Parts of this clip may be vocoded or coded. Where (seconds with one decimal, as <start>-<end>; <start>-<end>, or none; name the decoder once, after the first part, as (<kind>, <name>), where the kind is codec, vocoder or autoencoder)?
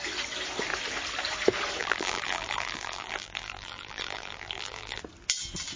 1.8-5.0 (vocoder, BigVGAN v2)